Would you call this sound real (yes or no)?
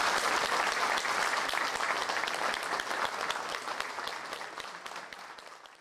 yes